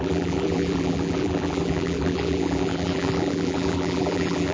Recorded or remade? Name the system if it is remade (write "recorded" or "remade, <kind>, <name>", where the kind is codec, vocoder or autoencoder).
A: remade, vocoder, BigVGAN v2